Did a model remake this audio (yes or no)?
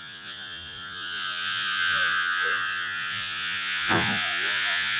yes